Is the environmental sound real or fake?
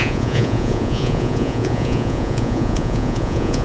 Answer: fake